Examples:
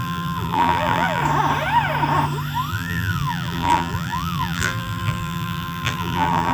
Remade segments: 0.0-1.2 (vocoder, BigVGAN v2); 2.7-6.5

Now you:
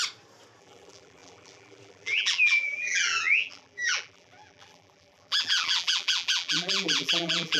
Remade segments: 0.6-7.6 (vocoder, BigVGAN v2)

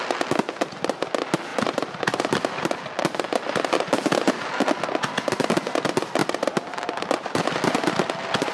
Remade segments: 1.5-4.8 (vocoder, BigVGAN v2); 6.2-8.5